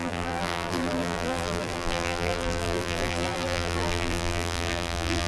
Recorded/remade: remade